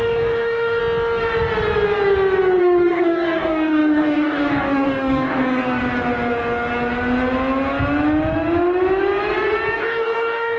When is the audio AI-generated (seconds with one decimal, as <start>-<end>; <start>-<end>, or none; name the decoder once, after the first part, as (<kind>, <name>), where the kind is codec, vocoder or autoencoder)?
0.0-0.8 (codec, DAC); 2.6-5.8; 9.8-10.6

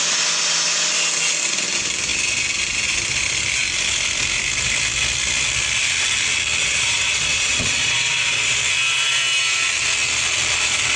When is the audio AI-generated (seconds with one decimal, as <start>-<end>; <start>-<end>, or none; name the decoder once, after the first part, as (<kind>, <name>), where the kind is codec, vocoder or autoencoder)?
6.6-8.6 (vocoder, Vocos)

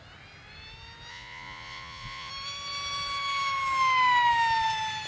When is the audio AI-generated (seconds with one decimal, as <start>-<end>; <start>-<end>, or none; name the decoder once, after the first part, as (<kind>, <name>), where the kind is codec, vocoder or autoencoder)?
1.1-2.3 (vocoder, Vocos)

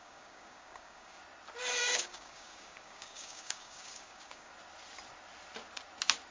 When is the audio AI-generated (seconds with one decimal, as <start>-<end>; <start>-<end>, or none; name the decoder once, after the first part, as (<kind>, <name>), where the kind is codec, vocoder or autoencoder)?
0.0-1.2 (codec, DAC); 1.8-4.5